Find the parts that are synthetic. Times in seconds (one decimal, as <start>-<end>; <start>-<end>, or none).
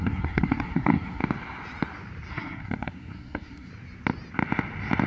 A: 0.0-1.2; 2.3-3.7